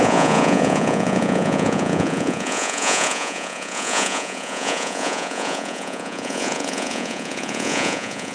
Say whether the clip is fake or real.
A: fake